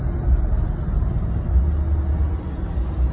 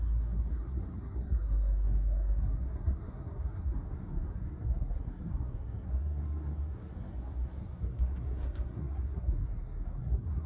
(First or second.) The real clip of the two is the first